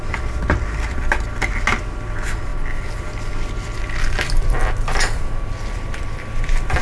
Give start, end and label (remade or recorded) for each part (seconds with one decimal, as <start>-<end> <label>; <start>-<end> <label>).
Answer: 0.0-6.8 recorded